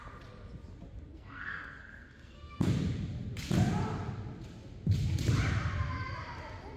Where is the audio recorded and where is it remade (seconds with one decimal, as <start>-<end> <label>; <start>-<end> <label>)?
0.0-1.1 recorded; 1.1-2.7 remade; 2.7-6.8 recorded